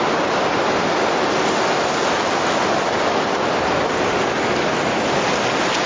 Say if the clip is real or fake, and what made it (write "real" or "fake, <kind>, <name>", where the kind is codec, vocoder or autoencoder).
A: real